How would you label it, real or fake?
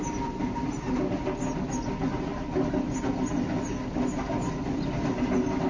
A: real